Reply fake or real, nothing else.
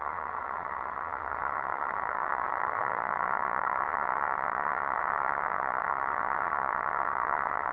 fake